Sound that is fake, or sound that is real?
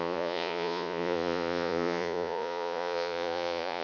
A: fake